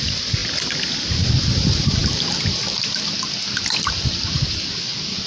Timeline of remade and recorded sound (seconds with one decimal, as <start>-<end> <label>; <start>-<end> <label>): 0.0-5.3 recorded

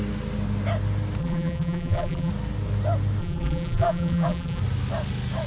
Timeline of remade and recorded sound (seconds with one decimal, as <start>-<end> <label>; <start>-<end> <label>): 0.0-1.2 recorded; 1.2-2.3 remade; 2.3-3.2 recorded; 3.2-4.6 remade; 4.6-5.5 recorded

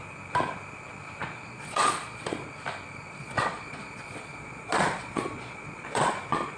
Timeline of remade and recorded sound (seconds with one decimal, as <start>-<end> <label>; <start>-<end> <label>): 0.0-1.2 recorded; 1.2-2.5 remade; 2.5-3.2 recorded; 3.2-6.6 remade

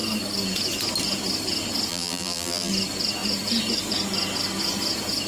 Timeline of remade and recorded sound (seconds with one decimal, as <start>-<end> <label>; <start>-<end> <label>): 0.0-1.9 recorded; 1.9-2.7 remade; 2.7-5.3 recorded